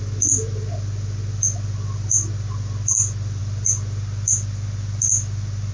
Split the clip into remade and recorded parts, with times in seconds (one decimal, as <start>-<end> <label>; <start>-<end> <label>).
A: 0.0-5.7 recorded